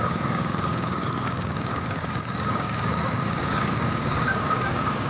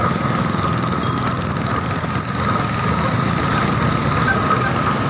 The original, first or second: second